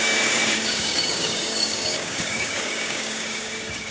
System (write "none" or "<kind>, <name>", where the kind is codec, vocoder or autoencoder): codec, DAC